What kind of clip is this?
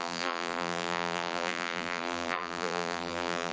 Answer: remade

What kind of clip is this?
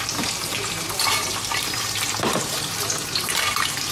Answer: remade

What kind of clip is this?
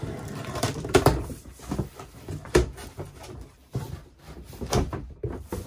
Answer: remade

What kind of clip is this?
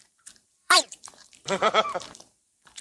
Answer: remade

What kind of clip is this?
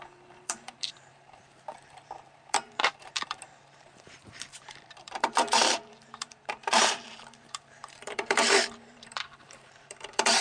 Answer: remade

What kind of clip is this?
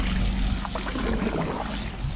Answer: recorded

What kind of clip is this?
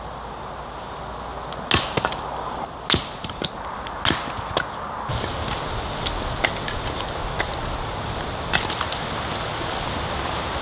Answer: recorded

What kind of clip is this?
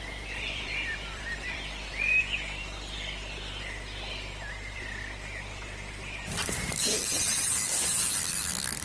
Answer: remade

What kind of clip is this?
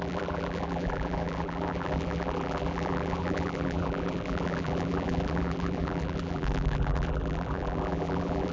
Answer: remade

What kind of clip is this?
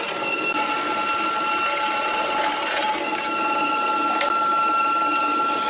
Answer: recorded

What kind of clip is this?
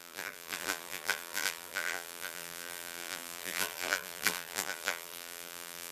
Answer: remade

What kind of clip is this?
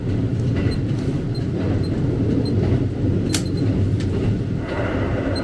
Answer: recorded